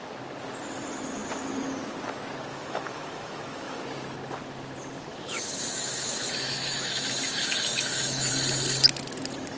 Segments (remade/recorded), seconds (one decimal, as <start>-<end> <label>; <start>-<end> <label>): 0.0-2.5 recorded; 2.5-3.8 remade; 3.8-5.1 recorded; 5.1-8.3 remade; 8.3-9.6 recorded